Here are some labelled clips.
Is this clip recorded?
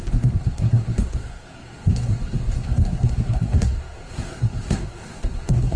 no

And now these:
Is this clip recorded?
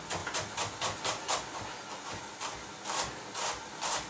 yes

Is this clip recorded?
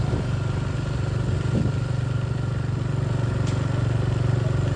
yes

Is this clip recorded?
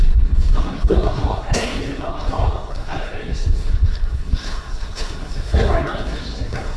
no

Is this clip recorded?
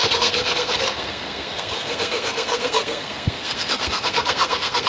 no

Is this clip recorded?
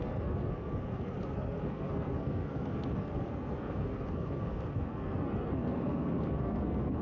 no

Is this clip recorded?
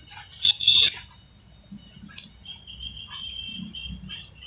yes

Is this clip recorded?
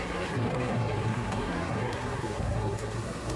no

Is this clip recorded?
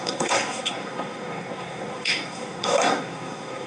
no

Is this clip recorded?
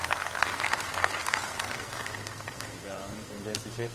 no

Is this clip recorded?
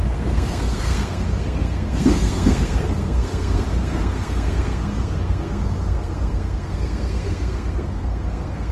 no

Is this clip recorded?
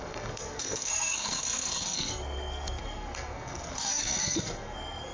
no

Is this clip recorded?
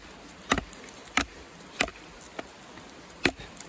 yes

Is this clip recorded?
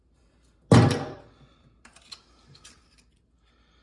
yes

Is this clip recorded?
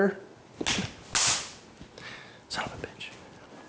yes